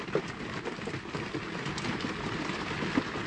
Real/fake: real